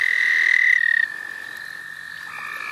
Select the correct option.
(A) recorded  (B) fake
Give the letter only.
A